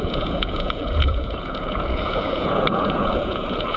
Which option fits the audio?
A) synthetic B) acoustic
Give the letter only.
A